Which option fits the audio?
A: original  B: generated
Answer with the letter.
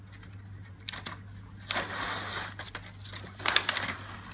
A